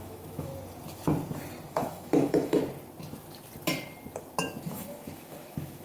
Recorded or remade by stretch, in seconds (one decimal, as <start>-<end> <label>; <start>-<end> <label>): 0.0-0.5 remade; 0.5-1.7 recorded; 1.7-2.6 remade; 2.6-4.7 recorded; 4.7-5.8 remade